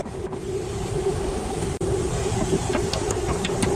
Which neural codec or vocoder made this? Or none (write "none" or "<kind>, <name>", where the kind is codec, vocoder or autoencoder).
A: vocoder, BigVGAN v2